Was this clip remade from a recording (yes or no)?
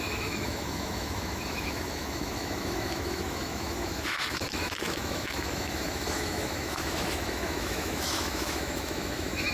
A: yes